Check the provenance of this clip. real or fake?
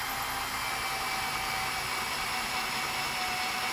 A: real